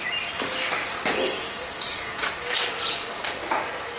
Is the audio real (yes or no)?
yes